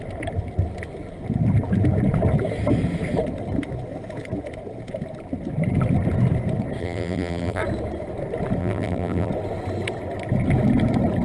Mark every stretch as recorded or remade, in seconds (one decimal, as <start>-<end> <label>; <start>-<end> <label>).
0.0-6.8 recorded; 6.8-7.6 remade; 7.6-8.6 recorded; 8.6-9.3 remade; 9.3-11.2 recorded